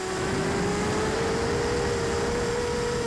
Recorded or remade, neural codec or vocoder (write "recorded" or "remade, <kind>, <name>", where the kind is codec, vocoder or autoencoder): recorded